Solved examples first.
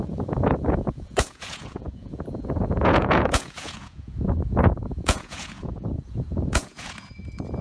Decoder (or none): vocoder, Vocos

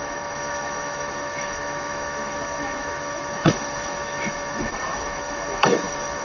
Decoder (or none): autoencoder, DAC-VAE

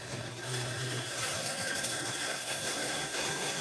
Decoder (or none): codec, SNAC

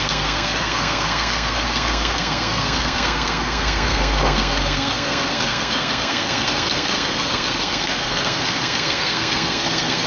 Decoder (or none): codec, SNAC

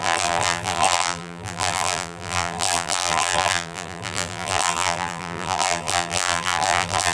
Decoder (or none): vocoder, BigVGAN v2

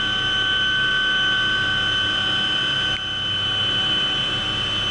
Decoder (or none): none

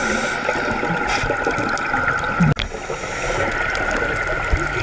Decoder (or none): none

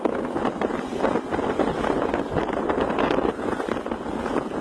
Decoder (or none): none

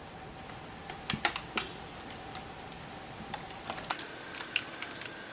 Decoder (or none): none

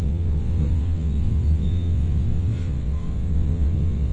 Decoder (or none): vocoder, WaveNeXt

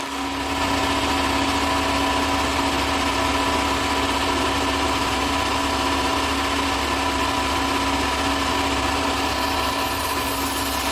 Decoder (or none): none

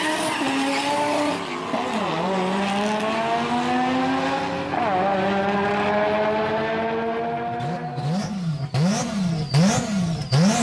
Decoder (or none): none